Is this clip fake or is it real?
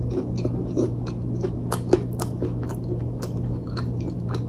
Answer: fake